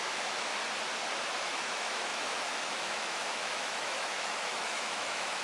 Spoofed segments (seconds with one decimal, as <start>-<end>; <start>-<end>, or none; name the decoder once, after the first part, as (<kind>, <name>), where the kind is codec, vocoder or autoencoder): 0.0-0.5 (autoencoder, DAC-VAE); 1.4-5.4